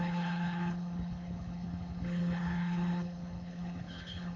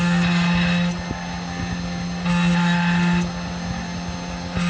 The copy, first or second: first